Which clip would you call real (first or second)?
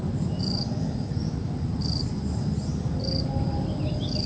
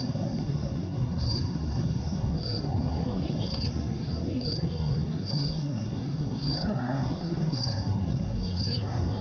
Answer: first